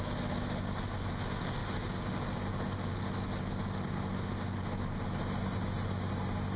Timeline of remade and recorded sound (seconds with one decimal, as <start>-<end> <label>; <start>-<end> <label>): 0.0-6.6 recorded